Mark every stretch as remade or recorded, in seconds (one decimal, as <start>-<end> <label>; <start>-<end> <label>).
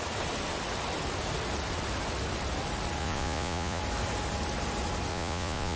0.0-3.0 recorded; 3.0-3.8 remade; 3.8-5.1 recorded; 5.1-5.8 remade